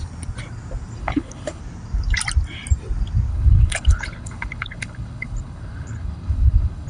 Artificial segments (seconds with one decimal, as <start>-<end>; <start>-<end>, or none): 1.0-1.6; 3.3-6.9